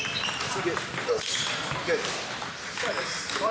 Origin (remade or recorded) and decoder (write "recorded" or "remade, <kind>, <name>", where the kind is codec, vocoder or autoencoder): recorded